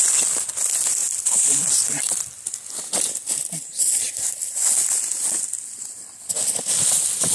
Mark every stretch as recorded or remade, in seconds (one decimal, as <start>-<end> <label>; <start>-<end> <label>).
0.0-7.3 recorded

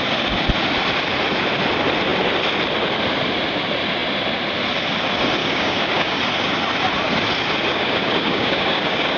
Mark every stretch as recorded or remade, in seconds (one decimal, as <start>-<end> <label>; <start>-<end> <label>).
0.0-5.4 recorded; 5.4-6.2 remade; 6.2-7.7 recorded; 7.7-9.2 remade

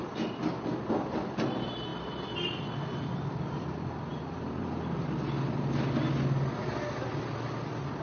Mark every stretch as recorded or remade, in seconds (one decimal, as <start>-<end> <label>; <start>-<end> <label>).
0.0-8.0 recorded

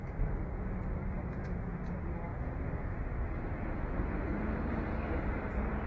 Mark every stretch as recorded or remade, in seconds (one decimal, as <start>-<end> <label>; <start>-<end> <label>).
0.0-5.9 recorded

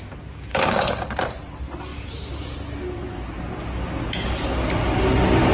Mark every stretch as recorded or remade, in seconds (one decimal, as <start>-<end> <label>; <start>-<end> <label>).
0.0-0.5 recorded; 0.5-1.0 remade; 1.0-5.5 recorded

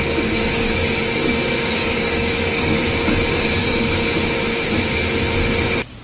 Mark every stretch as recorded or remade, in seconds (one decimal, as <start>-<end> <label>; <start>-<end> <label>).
0.0-2.8 remade; 2.8-3.6 recorded; 3.6-4.0 remade; 4.0-6.0 recorded

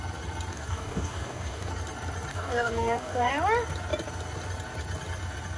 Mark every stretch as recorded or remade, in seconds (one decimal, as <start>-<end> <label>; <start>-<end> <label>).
0.0-0.5 recorded; 0.5-1.7 remade; 1.7-2.3 recorded; 2.3-3.3 remade; 3.3-5.6 recorded

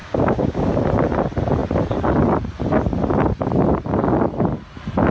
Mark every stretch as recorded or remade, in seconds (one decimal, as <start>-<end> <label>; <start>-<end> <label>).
0.0-0.7 remade; 0.7-5.1 recorded